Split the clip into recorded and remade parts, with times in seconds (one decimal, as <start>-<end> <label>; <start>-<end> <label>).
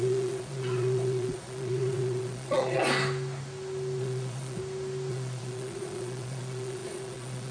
0.0-2.8 remade; 2.8-4.0 recorded; 4.0-4.6 remade; 4.6-5.1 recorded; 5.1-7.5 remade